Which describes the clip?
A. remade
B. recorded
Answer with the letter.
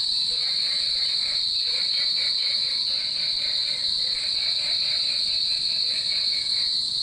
A